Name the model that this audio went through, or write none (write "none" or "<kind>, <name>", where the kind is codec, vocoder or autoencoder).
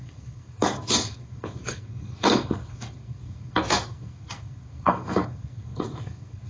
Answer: codec, SNAC